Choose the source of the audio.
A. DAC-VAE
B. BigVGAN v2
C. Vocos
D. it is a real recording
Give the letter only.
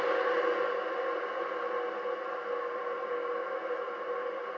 D